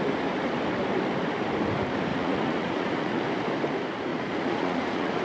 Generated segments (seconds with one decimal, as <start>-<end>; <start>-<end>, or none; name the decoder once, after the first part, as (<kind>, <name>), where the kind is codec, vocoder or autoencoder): 2.1-3.2 (vocoder, Vocos); 4.1-5.2